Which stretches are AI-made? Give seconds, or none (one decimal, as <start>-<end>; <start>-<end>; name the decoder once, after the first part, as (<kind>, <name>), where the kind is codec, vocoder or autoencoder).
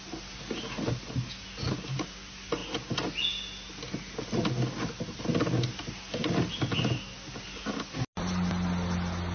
none